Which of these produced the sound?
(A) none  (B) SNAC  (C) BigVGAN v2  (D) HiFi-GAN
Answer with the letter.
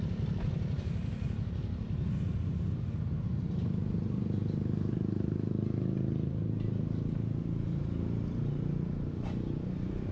A